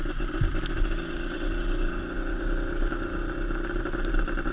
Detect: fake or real real